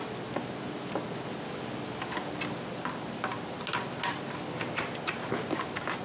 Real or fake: real